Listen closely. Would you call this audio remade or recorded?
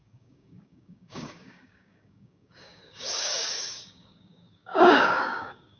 remade